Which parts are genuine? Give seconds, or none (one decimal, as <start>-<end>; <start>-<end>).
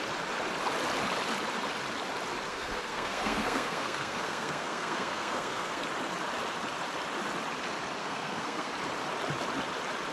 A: 0.0-2.5; 5.8-8.0; 8.7-10.1